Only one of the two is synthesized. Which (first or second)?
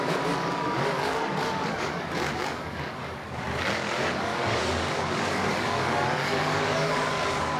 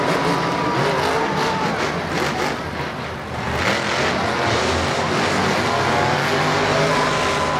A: first